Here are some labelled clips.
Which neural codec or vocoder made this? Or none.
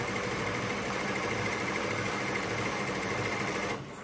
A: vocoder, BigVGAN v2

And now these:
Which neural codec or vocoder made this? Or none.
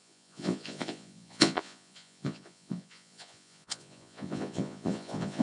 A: vocoder, Vocos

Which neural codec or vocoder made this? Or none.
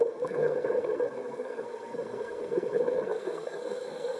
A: codec, SNAC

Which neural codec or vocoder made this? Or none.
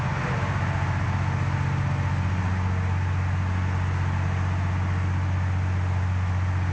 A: none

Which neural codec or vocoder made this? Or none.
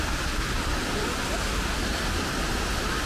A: none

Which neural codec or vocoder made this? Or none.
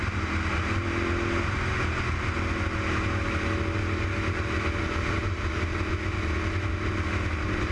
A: none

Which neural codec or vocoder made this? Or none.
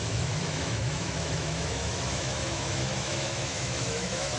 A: autoencoder, DAC-VAE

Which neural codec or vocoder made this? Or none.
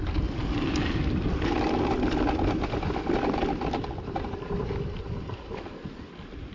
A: none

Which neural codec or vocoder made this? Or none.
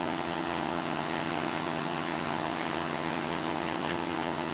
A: vocoder, HiFi-GAN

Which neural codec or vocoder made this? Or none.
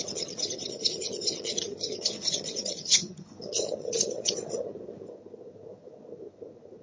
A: vocoder, HiFi-GAN